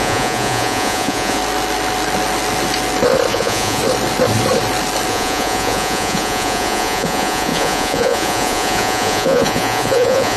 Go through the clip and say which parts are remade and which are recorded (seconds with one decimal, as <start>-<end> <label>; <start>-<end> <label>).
0.0-1.4 remade; 1.4-3.3 recorded; 3.3-3.8 remade; 3.8-5.1 recorded; 5.1-10.4 remade